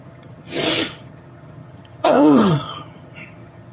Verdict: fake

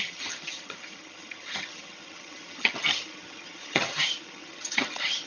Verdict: fake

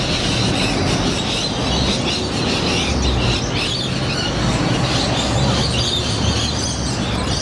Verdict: real